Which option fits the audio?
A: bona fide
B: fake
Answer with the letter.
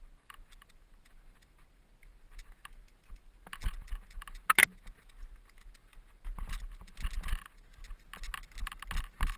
A